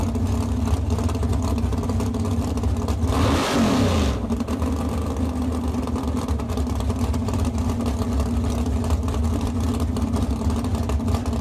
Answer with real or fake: real